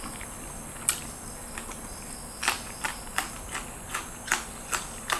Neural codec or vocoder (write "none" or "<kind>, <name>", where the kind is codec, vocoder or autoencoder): none